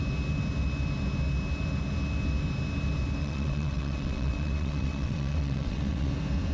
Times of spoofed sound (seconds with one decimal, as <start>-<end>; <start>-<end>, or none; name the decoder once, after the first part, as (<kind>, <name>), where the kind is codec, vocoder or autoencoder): 3.2-6.1 (vocoder, WaveNeXt)